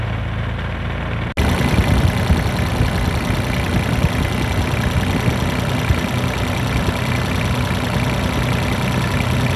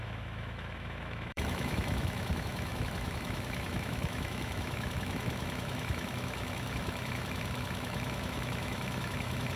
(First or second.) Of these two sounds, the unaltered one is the first